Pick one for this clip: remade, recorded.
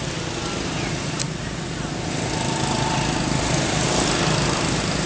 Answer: recorded